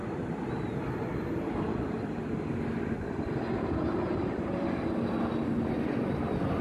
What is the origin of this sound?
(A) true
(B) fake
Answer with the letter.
A